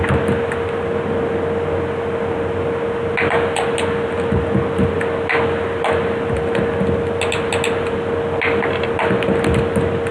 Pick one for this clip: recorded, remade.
recorded